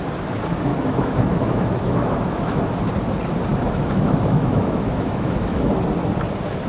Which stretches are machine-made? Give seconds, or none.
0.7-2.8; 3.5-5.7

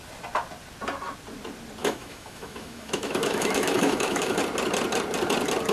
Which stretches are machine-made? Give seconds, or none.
1.8-4.4

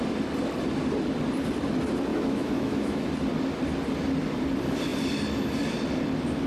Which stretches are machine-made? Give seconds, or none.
2.1-3.1

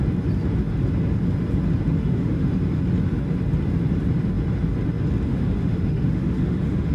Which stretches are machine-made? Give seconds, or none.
2.0-2.6; 5.3-6.9

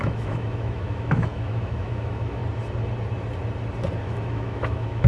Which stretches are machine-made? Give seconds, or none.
0.0-2.4; 4.0-5.1